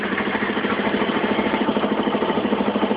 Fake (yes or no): yes